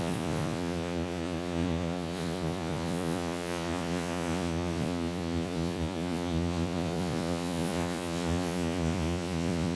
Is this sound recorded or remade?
remade